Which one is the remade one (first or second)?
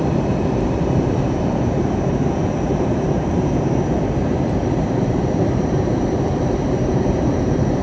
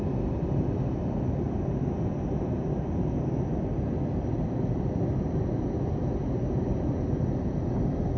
first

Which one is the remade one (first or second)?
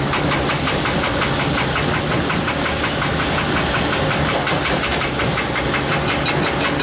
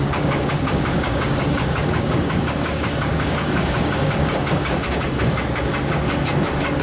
second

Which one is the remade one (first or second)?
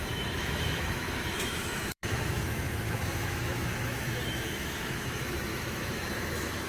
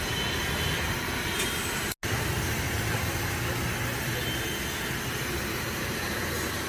first